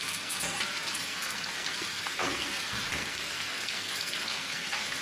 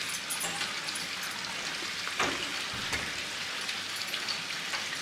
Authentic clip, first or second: second